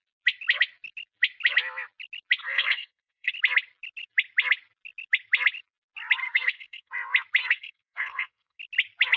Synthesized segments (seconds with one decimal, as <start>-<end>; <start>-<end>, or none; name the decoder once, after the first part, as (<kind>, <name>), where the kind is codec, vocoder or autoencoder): 2.4-3.3 (codec, SNAC); 6.2-6.9; 7.4-8.6